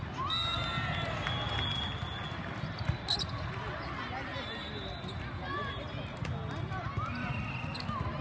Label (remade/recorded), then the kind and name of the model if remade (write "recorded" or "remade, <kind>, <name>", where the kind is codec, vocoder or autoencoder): recorded